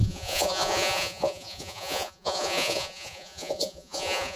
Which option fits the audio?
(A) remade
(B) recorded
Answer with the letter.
A